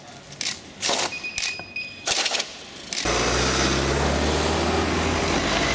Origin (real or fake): real